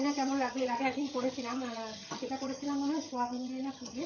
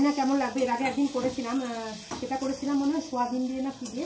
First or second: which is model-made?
first